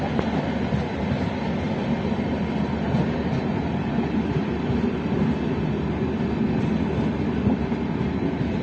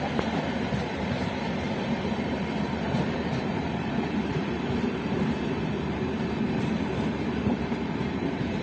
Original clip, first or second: first